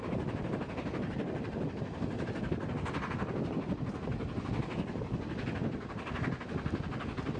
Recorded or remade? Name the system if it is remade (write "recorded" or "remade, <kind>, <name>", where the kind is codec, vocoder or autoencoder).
recorded